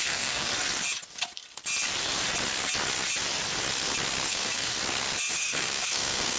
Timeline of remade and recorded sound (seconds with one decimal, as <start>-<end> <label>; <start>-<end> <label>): 0.0-0.5 remade; 0.5-4.3 recorded; 4.3-4.7 remade; 4.7-5.3 recorded; 5.3-6.4 remade